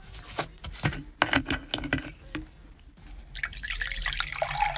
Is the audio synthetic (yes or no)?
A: no